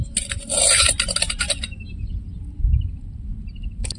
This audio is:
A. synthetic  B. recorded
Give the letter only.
B